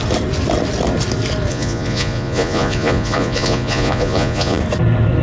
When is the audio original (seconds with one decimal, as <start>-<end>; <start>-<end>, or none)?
0.0-1.5; 4.6-5.2